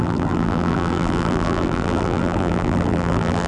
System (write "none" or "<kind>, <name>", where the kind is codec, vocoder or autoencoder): vocoder, BigVGAN v2